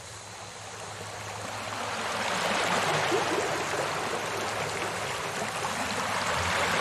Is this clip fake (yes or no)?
no